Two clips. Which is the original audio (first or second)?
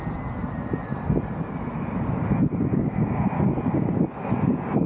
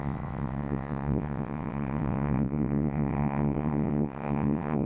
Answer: first